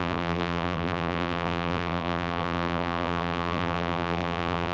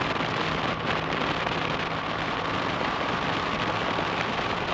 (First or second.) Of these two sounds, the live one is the second